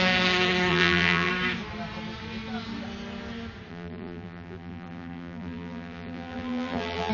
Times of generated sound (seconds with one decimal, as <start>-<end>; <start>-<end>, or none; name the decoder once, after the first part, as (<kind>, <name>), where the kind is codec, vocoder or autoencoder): 0.7-1.3 (vocoder, BigVGAN v2); 3.7-7.1